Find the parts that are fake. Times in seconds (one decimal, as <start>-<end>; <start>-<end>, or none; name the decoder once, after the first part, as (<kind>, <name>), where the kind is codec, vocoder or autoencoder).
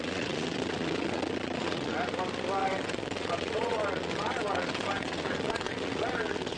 0.0-1.9 (vocoder, WaveNeXt); 2.6-6.6